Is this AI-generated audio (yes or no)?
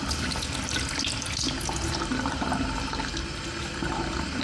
no